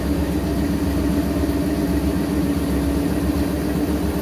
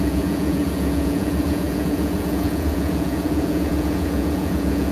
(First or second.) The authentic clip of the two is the first